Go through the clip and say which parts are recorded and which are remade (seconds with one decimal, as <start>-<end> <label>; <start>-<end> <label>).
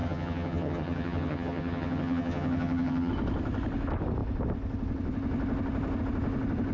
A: 0.0-3.1 remade; 3.1-6.7 recorded